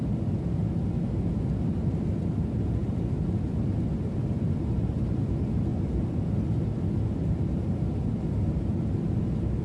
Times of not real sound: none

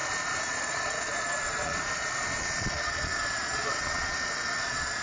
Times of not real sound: 0.0-5.0 (vocoder, Vocos)

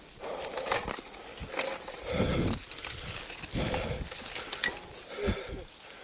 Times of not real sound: none